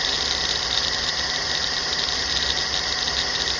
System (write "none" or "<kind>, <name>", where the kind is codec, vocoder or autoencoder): none